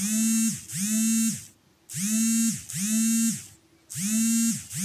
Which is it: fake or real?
real